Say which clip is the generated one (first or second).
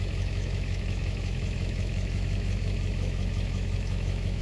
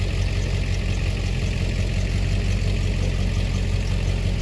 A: first